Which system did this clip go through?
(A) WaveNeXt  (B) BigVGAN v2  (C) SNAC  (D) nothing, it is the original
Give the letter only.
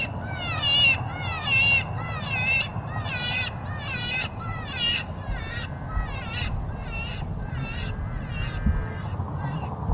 D